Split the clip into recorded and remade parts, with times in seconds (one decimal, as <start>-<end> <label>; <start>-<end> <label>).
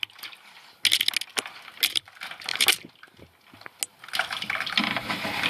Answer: 0.0-5.5 recorded